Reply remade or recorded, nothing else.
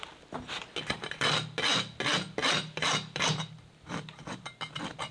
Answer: recorded